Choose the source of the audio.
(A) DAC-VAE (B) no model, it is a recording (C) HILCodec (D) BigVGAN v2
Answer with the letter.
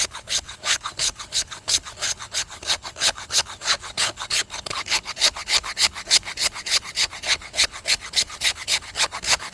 C